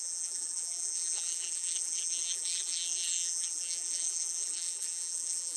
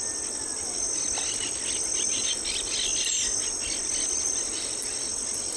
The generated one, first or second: first